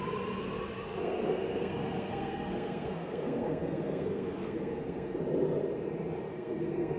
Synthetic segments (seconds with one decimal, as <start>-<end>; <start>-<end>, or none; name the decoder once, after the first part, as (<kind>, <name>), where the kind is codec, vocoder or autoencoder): 1.0-5.2 (codec, SNAC); 6.3-7.0